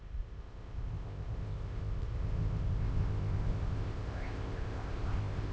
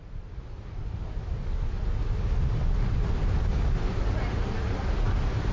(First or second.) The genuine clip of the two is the second